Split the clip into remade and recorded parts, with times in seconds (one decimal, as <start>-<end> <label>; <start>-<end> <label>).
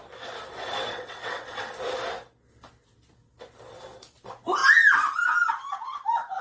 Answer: 0.0-0.9 recorded; 0.9-1.7 remade; 1.7-6.4 recorded